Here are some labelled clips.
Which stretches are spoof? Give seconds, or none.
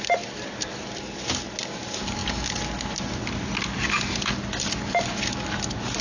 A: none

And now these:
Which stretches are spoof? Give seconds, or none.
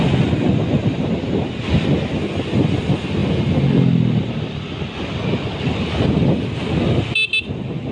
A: none